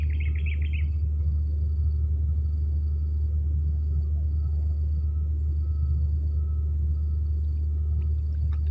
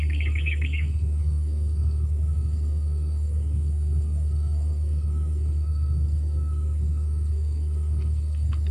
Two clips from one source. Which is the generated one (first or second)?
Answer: second